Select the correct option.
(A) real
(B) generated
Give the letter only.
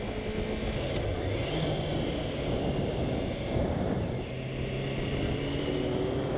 A